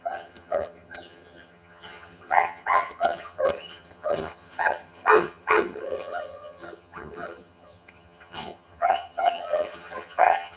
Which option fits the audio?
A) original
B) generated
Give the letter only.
B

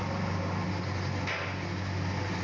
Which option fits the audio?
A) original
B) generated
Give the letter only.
A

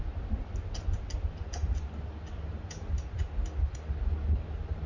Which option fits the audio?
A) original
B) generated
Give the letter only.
A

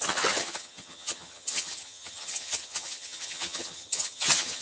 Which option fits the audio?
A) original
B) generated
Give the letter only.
B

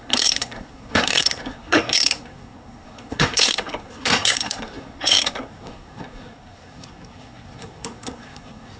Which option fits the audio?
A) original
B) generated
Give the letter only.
B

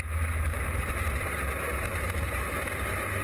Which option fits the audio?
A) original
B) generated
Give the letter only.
A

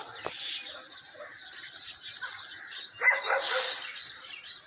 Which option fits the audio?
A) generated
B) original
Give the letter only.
B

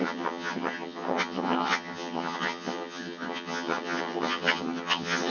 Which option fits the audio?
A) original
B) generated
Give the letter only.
B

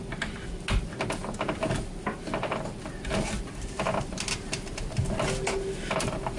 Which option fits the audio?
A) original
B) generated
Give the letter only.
A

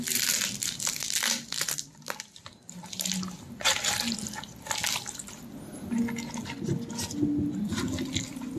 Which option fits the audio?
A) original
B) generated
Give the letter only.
A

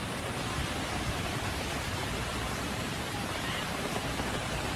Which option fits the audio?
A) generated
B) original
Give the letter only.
A